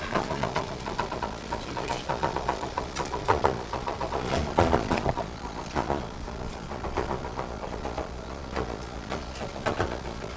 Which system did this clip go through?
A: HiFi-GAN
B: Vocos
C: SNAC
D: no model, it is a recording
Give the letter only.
B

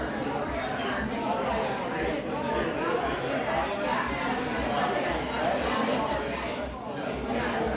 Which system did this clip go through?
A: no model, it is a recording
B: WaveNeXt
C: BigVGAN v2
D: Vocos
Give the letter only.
A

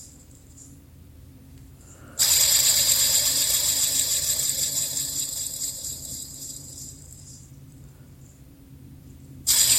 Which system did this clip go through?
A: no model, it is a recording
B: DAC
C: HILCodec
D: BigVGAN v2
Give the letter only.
D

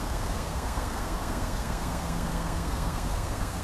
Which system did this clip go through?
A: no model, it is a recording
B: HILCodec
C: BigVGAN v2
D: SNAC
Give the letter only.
D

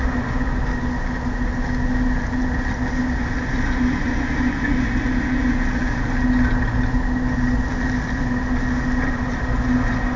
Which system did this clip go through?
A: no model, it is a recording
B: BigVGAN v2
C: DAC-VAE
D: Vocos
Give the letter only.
A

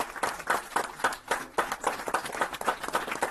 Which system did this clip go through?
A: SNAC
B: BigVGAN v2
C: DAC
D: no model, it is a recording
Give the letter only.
D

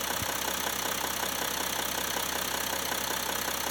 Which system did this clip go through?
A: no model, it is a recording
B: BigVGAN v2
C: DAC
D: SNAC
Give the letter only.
A